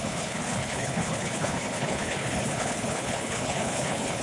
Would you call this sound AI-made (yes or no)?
yes